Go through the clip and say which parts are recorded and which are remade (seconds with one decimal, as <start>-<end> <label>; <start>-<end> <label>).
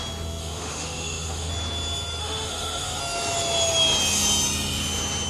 0.0-0.4 recorded; 0.4-1.5 remade; 1.5-2.2 recorded; 2.2-3.0 remade; 3.0-5.3 recorded